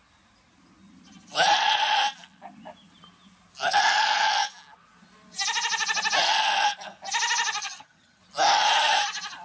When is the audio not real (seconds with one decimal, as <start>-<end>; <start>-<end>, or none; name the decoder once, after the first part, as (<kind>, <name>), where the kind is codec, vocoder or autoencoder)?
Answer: 7.6-8.2 (vocoder, HiFi-GAN)

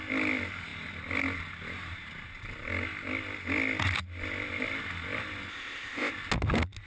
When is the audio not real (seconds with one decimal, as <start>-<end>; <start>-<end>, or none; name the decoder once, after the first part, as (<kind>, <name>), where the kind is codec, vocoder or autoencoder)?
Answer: 5.5-6.1 (codec, ZipCodec)